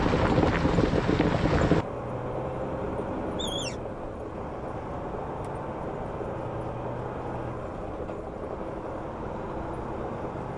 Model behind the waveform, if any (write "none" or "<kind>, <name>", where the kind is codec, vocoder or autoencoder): none